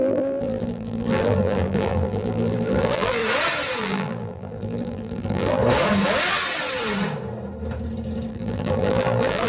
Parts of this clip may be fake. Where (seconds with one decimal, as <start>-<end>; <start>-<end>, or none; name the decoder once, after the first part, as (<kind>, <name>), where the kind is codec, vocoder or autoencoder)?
0.0-3.2 (vocoder, BigVGAN v2); 3.8-5.6; 8.3-9.5